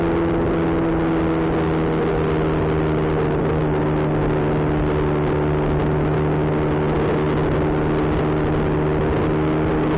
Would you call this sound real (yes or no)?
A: yes